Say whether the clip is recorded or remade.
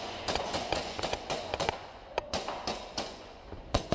remade